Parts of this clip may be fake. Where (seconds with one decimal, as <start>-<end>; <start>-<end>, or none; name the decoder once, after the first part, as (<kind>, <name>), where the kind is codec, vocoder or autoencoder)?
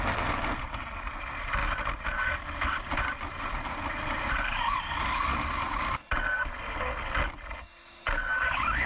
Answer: 1.6-5.8 (vocoder, BigVGAN v2)